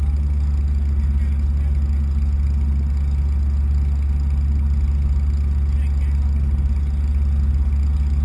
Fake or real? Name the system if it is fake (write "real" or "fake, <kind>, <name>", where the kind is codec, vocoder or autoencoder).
real